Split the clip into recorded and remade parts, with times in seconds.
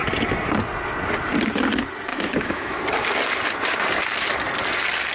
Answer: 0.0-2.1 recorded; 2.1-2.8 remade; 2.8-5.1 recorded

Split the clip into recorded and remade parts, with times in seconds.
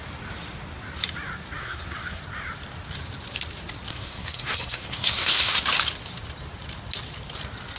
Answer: 0.0-1.6 recorded; 1.6-2.2 remade; 2.2-3.9 recorded; 3.9-5.6 remade; 5.6-7.8 recorded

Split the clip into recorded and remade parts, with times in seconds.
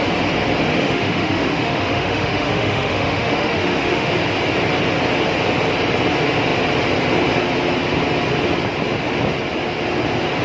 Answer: 0.0-0.7 recorded; 0.7-4.1 remade; 4.1-10.4 recorded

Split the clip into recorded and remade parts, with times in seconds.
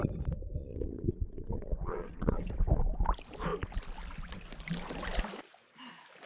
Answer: 0.0-0.6 recorded; 0.6-2.5 remade; 2.5-6.3 recorded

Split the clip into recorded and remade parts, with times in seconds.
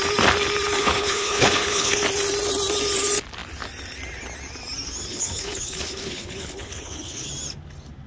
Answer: 0.0-0.8 recorded; 0.8-2.0 remade; 2.0-5.1 recorded; 5.1-7.3 remade; 7.3-8.1 recorded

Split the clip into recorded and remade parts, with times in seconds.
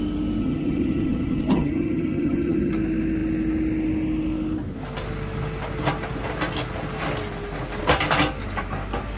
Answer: 0.0-0.4 recorded; 0.4-2.7 remade; 2.7-9.2 recorded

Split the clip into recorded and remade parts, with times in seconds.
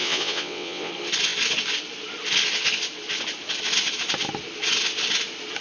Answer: 0.0-0.9 remade; 0.9-5.6 recorded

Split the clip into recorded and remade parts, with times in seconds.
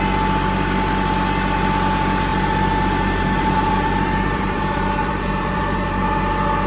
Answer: 0.0-2.3 recorded; 2.3-6.3 remade; 6.3-6.7 recorded